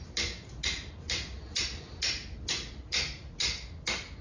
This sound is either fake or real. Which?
real